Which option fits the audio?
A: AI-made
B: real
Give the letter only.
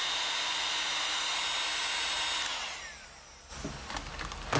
B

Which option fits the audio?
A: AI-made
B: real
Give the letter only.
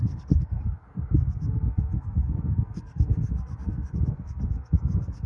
A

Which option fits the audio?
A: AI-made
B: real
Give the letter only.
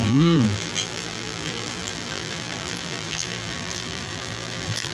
A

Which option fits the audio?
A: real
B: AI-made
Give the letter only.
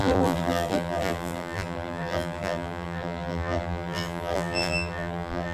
B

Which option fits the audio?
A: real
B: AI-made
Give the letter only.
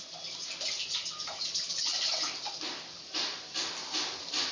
A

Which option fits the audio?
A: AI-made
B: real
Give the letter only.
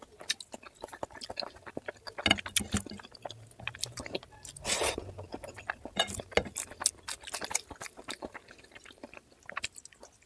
B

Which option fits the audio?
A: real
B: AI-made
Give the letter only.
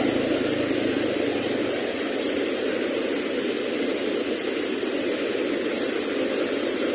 A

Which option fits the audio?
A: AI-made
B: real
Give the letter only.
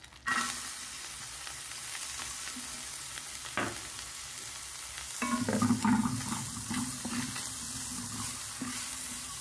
B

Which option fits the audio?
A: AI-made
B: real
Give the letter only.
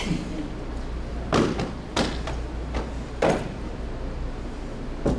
B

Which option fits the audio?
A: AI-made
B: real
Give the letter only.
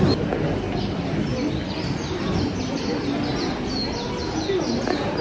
B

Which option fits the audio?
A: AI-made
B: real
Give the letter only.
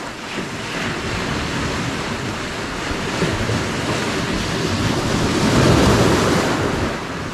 B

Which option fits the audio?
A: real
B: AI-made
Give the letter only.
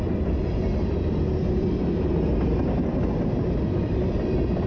A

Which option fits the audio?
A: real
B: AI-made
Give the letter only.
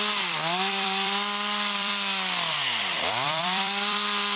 B